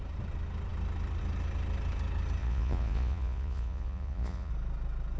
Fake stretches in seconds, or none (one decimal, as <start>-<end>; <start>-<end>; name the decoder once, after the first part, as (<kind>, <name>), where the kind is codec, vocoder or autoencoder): 2.4-4.5 (vocoder, Vocos)